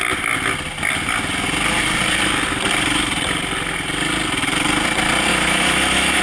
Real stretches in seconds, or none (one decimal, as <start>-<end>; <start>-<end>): 0.0-5.3